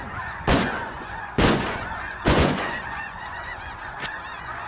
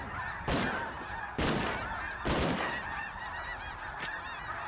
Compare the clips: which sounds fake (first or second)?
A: first